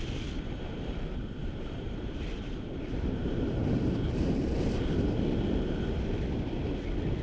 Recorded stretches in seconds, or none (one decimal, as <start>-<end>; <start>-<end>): 0.0-1.4; 5.2-7.2